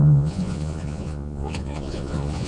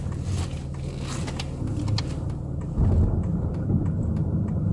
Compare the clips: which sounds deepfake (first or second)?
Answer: first